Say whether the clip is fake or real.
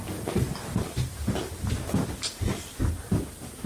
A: real